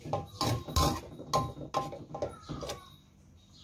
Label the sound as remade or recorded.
recorded